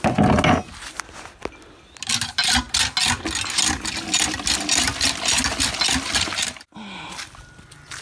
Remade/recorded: recorded